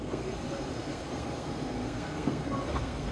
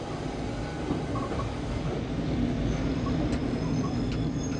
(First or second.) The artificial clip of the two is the first